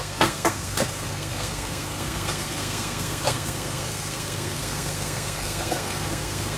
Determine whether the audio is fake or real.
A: fake